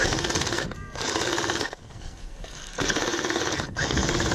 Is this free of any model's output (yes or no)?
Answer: no